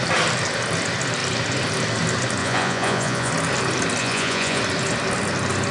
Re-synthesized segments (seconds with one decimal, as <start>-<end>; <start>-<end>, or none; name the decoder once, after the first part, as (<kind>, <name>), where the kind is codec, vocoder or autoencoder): 2.4-3.3 (vocoder, Vocos); 4.0-4.6